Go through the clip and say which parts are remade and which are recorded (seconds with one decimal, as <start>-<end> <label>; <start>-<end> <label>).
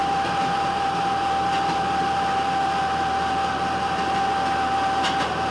0.0-5.5 recorded